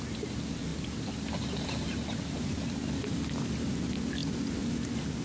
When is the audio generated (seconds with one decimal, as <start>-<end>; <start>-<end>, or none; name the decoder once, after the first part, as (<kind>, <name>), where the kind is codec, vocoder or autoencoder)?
none